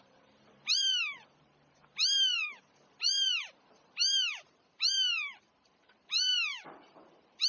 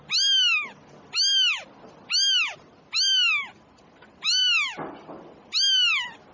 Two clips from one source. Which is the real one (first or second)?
second